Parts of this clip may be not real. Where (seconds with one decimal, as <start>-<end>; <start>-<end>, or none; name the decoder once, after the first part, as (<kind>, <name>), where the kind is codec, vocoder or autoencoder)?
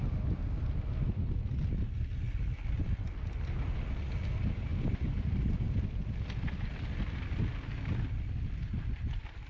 none